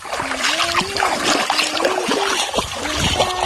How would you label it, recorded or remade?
recorded